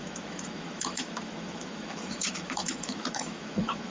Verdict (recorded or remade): remade